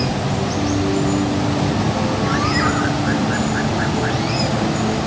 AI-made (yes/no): no